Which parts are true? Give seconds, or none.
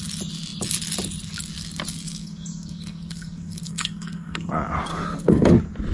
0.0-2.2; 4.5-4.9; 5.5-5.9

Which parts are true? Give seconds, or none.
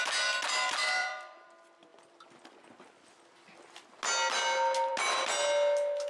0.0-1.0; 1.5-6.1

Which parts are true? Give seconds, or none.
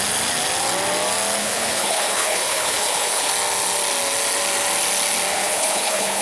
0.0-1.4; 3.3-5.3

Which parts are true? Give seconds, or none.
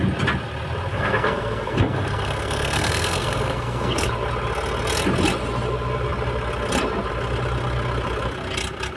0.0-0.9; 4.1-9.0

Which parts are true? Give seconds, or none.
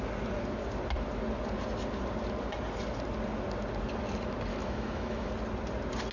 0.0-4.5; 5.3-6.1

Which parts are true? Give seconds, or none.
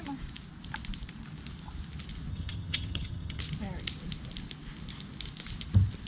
0.0-2.3; 3.4-6.1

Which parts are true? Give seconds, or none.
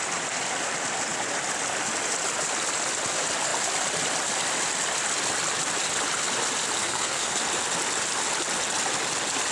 0.0-6.8; 7.4-9.5